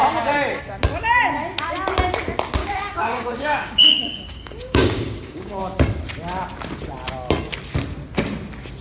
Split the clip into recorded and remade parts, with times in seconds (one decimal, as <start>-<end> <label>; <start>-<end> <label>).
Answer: 0.0-2.6 recorded; 2.6-5.6 remade; 5.6-8.8 recorded